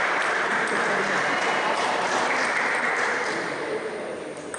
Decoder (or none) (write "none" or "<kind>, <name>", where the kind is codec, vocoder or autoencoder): vocoder, BigVGAN v2